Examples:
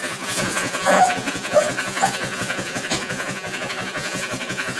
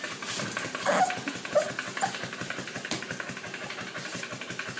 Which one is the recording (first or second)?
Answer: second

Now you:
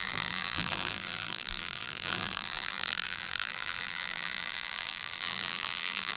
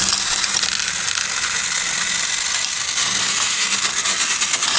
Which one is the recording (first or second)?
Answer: second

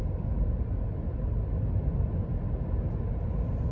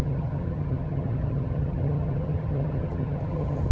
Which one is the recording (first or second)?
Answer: first